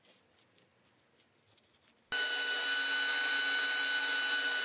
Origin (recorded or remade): recorded